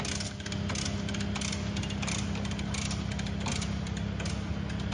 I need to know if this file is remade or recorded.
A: recorded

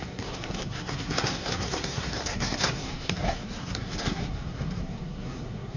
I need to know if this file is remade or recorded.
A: remade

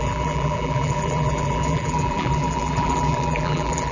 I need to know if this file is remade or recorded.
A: remade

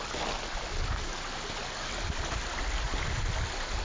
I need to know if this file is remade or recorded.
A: recorded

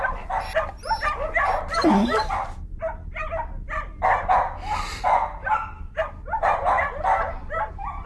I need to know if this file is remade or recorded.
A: recorded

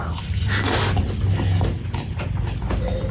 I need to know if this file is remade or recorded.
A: recorded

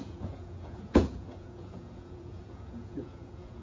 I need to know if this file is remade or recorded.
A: remade